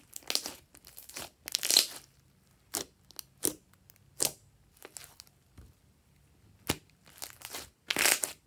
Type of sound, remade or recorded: recorded